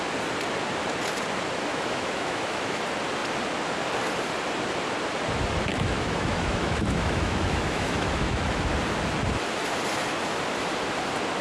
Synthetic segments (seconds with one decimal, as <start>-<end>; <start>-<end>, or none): 1.7-2.8; 5.7-8.6